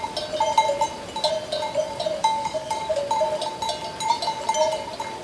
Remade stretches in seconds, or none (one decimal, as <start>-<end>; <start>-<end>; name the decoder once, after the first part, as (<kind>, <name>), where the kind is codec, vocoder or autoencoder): 2.2-3.0 (codec, DAC)